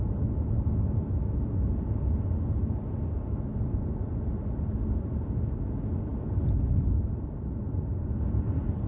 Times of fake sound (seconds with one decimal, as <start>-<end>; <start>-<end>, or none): none